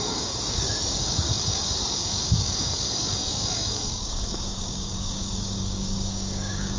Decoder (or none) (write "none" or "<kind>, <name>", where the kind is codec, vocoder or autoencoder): codec, DAC